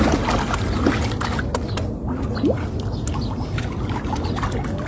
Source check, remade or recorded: recorded